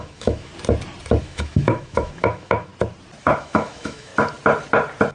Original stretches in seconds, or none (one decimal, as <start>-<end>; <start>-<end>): 0.5-1.2; 2.7-3.4; 4.1-5.1